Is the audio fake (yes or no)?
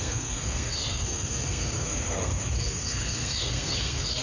yes